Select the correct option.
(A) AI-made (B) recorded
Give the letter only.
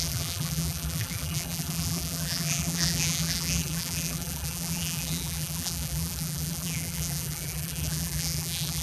A